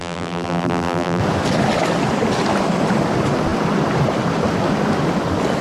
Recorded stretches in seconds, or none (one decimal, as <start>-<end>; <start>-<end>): 1.2-5.6

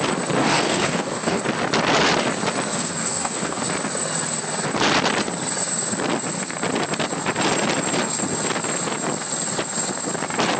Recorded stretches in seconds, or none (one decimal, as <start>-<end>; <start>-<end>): 0.0-0.4; 1.4-2.7; 3.6-10.6